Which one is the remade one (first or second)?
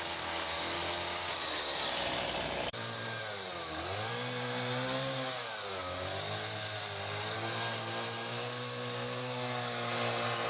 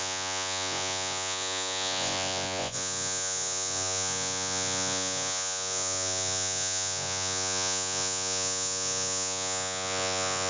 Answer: second